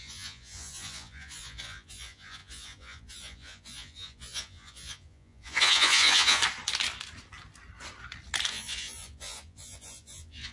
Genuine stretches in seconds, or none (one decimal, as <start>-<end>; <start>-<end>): 6.4-8.5